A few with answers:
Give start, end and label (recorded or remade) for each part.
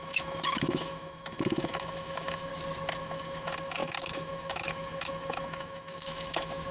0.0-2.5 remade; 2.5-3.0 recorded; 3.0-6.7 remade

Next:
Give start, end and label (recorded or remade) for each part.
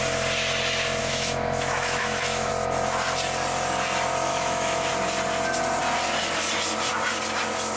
0.0-1.0 recorded; 1.0-2.5 remade; 2.5-4.3 recorded; 4.3-4.9 remade; 4.9-7.8 recorded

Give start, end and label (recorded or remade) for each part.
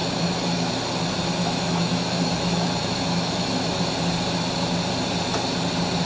0.0-0.7 remade; 0.7-1.4 recorded; 1.4-3.8 remade; 3.8-6.0 recorded